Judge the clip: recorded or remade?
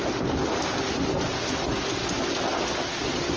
recorded